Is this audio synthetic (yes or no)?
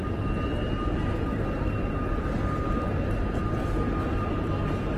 no